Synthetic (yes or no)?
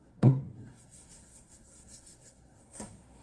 yes